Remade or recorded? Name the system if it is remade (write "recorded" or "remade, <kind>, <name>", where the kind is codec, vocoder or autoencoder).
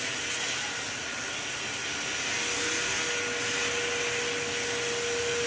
recorded